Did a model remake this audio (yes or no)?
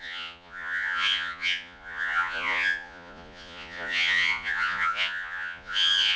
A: yes